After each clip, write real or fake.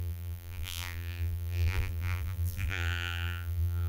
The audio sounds fake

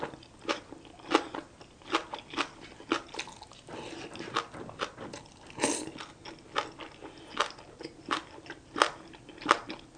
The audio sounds real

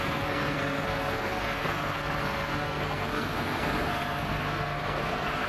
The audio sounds fake